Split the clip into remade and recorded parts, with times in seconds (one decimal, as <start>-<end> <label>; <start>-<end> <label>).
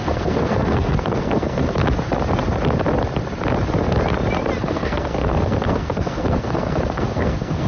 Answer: 0.0-1.8 remade; 1.8-4.6 recorded; 4.6-7.7 remade